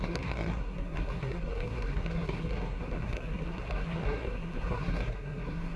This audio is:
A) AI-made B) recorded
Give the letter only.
A